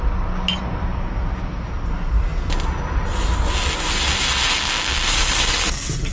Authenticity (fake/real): real